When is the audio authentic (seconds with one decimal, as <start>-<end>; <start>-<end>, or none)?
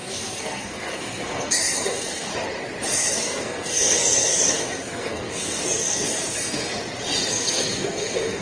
2.3-2.9; 6.7-7.3